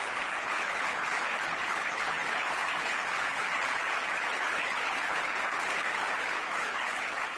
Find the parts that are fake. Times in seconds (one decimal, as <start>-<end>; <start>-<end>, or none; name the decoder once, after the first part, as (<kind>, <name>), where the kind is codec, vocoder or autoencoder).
0.0-7.4 (codec, HILCodec)